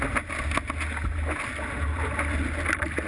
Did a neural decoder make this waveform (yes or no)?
no